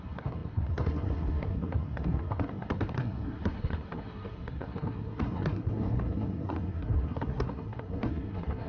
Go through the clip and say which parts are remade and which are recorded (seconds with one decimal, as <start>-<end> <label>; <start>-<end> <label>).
0.0-8.7 remade

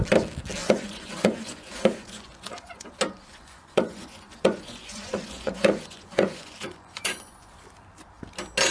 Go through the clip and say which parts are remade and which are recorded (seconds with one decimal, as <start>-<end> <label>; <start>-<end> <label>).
0.0-0.6 recorded; 0.6-2.9 remade; 2.9-3.3 recorded; 3.3-7.6 remade; 7.6-8.7 recorded

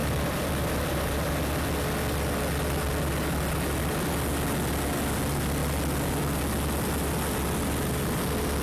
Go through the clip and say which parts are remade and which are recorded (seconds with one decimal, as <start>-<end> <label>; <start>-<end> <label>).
0.0-1.4 remade; 1.4-8.6 recorded

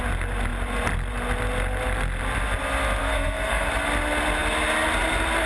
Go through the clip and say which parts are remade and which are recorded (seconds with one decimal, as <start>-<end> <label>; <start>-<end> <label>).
0.0-3.0 recorded; 3.0-3.7 remade; 3.7-5.5 recorded